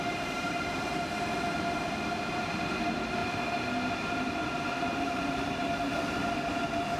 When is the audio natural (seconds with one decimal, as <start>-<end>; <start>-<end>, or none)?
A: 0.9-2.1; 3.2-4.0